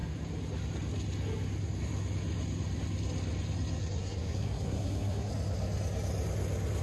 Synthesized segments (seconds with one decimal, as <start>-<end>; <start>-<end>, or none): 3.8-5.3